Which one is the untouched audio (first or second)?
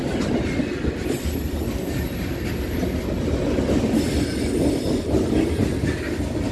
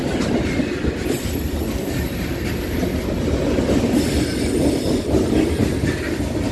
first